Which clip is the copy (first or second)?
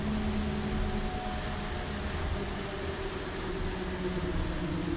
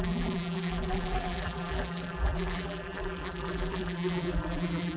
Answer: second